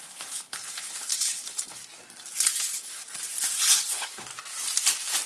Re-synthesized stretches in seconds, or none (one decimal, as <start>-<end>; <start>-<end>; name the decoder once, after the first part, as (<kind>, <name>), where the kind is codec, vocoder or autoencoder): 0.0-1.8 (codec, HILCodec); 2.6-3.0; 3.9-4.3